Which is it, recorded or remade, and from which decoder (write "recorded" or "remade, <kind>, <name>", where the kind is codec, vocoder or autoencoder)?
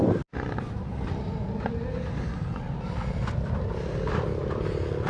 recorded